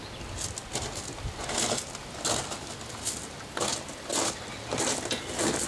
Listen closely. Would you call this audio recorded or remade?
recorded